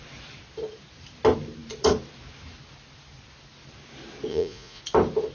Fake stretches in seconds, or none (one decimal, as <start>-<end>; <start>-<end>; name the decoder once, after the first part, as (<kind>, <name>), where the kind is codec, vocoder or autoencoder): 4.3-4.8 (vocoder, Vocos)